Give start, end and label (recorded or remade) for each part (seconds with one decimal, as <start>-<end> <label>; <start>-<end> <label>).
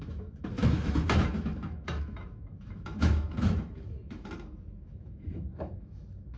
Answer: 0.0-6.4 remade